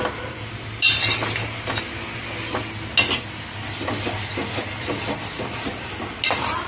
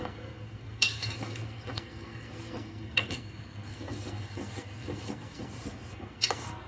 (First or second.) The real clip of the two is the first